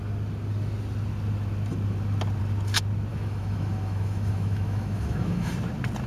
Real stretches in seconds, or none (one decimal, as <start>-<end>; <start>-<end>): 0.0-3.1; 5.5-6.1